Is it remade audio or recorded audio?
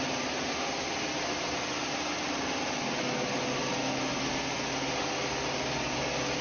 recorded